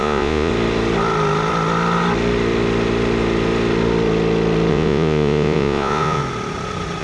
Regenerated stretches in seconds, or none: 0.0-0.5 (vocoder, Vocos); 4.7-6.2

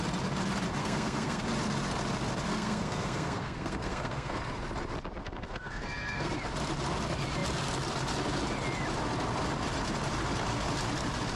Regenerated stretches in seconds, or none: 0.8-1.4 (codec, SNAC); 2.5-4.4; 5.2-6.3